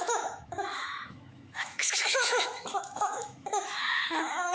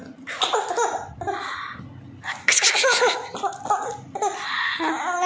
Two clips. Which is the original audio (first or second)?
second